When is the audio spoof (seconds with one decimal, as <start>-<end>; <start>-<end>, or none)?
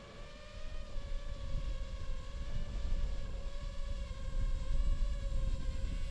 0.7-4.4